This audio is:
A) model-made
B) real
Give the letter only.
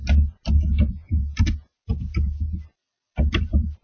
B